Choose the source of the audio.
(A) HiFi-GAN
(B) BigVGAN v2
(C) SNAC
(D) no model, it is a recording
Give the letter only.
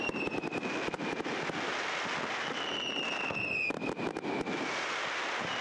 D